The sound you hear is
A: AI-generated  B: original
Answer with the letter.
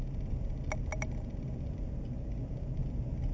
B